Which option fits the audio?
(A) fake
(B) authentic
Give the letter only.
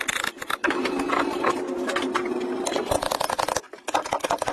B